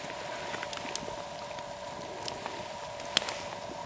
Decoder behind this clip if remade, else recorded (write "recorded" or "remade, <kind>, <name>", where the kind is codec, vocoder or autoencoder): recorded